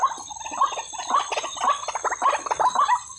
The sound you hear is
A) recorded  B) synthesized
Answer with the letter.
A